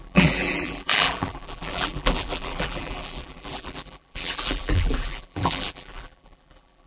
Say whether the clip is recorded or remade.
remade